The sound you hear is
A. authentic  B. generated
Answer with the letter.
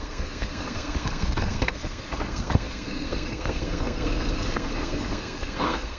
B